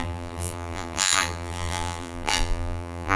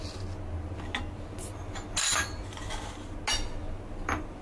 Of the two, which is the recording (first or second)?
second